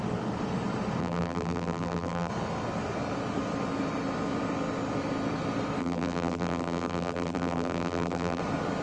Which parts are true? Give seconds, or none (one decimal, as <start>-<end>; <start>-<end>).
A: 0.0-1.0; 2.3-5.8; 8.4-8.8